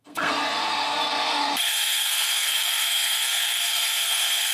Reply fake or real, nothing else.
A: fake